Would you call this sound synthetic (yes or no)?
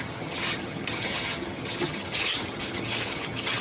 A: yes